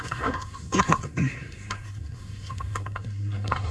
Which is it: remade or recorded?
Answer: remade